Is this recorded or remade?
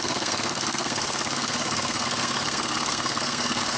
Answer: remade